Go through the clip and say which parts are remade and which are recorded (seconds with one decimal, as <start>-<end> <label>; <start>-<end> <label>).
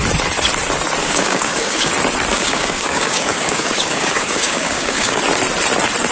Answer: 0.0-1.0 recorded; 1.0-1.9 remade; 1.9-2.3 recorded; 2.3-5.2 remade; 5.2-6.1 recorded